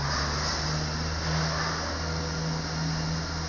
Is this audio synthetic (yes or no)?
no